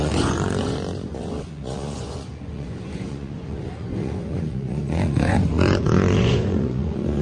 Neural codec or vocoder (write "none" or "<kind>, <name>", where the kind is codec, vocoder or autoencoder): vocoder, Vocos